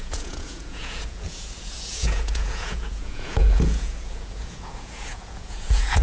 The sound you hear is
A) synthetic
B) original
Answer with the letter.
A